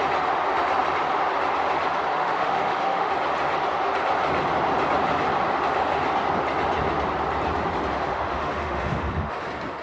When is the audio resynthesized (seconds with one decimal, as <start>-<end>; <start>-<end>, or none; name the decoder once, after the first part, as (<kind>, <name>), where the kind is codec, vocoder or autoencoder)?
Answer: 2.1-3.1 (autoencoder, DAC-VAE); 8.1-9.3